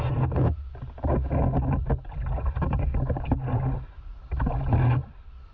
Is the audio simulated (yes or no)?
no